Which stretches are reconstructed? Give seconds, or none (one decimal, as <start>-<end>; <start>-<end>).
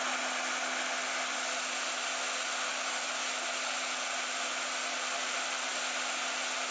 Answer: none